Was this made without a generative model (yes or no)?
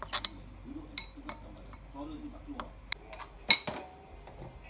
yes